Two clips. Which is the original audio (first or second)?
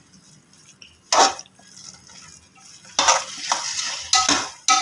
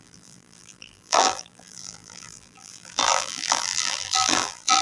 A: first